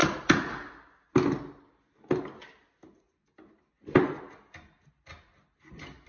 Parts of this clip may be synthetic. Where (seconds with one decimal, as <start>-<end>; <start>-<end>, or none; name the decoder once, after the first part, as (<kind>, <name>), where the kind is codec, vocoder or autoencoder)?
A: none